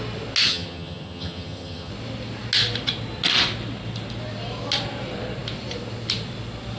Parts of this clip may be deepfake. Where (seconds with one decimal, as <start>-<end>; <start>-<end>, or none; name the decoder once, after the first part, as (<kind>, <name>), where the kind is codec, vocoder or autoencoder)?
0.5-1.9 (vocoder, HiFi-GAN)